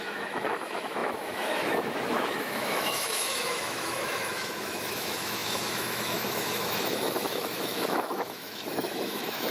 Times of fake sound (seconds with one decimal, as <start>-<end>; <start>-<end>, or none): 0.0-9.5